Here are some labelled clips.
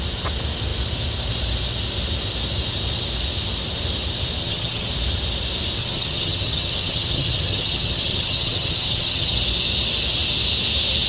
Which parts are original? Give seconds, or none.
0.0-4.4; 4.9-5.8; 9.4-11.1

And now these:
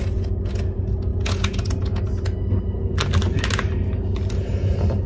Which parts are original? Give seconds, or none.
0.0-5.1

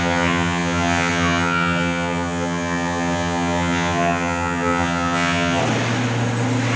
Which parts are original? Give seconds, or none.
5.6-6.8

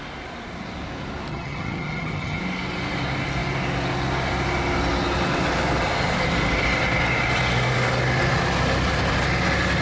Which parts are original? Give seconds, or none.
0.0-1.3; 2.4-9.8

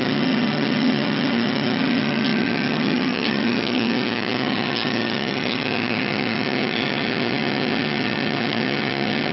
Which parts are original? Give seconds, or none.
none

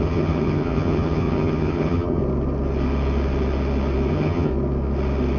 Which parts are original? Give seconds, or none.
2.2-4.1; 4.5-5.4

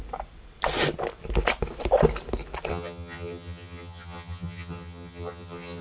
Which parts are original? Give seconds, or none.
0.0-2.7